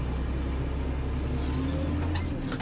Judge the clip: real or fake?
real